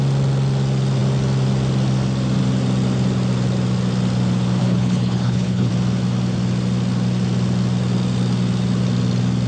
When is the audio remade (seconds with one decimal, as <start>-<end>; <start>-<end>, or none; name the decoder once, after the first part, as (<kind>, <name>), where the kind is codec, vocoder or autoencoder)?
4.6-5.7 (codec, HILCodec)

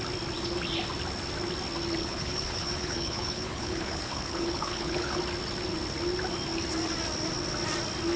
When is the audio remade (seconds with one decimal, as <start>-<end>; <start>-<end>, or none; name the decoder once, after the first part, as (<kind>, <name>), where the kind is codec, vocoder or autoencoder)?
2.0-5.2 (codec, HILCodec)

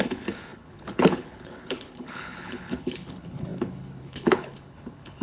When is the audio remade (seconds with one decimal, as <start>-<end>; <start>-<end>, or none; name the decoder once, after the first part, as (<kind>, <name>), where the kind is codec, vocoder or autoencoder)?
0.0-5.2 (codec, HILCodec)

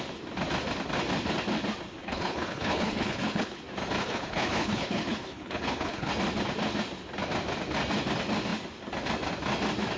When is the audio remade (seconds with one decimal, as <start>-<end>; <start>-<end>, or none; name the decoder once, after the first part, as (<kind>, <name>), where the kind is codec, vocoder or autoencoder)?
2.0-3.6 (codec, HILCodec); 4.0-6.1

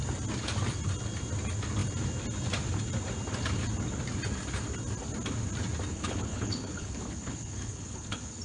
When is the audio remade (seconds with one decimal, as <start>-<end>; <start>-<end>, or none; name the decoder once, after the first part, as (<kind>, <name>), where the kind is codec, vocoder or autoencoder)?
5.9-8.4 (codec, HILCodec)

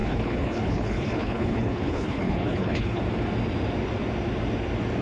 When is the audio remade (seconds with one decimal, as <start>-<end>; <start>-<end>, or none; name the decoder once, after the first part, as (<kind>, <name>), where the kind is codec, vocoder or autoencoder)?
0.0-3.0 (codec, HILCodec)

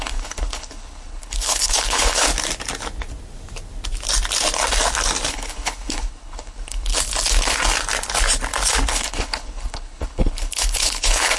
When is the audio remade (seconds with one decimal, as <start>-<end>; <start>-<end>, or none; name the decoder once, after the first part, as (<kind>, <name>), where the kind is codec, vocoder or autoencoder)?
0.0-2.3 (codec, HILCodec); 5.3-6.9; 8.9-11.4